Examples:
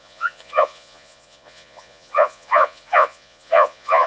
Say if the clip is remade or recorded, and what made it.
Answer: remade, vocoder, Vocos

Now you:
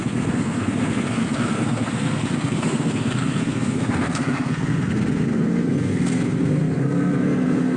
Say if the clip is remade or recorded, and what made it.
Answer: remade, codec, SNAC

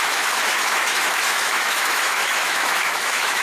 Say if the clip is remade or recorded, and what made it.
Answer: remade, autoencoder, DAC-VAE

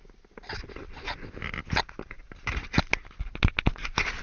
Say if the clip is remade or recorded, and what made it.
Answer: recorded